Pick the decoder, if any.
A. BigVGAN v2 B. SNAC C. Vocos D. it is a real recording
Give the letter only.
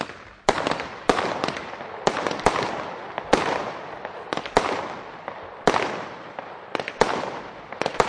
D